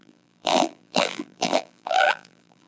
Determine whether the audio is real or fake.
fake